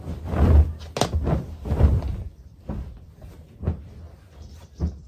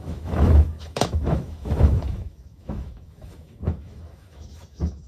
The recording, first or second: first